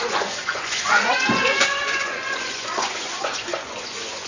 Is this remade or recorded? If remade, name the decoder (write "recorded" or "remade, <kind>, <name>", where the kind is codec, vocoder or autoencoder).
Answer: remade, vocoder, Vocos